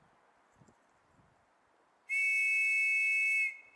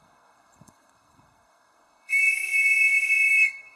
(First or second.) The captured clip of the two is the first